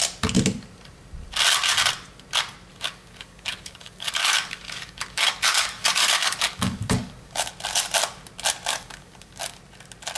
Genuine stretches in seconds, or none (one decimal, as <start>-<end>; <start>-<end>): 0.0-2.7; 7.5-8.7; 9.6-10.2